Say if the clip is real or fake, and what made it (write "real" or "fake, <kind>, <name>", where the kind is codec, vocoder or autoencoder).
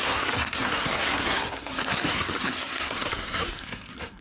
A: fake, codec, SNAC